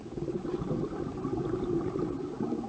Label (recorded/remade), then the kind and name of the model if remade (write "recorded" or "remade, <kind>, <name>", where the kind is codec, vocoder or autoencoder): recorded